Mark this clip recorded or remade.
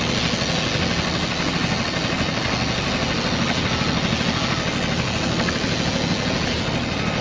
recorded